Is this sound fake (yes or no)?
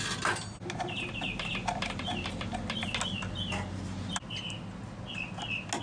no